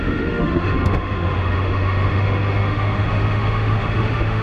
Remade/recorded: remade